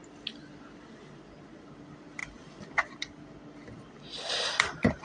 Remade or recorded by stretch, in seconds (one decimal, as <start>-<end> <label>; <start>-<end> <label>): 0.0-0.5 recorded; 0.5-5.0 remade